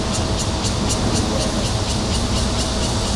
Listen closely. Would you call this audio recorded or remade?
recorded